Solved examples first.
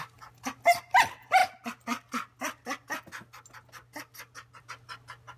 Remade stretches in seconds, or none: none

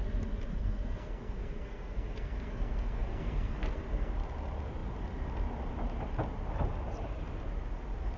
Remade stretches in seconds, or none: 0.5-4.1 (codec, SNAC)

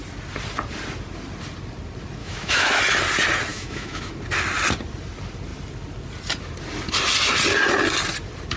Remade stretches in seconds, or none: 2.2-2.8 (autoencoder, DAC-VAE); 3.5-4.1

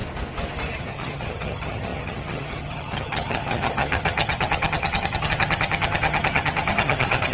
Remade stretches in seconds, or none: 0.8-7.3 (vocoder, HiFi-GAN)

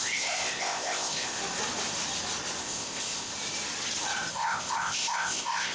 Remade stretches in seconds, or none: 0.0-1.4 (codec, ZipCodec); 2.6-3.3; 4.3-5.7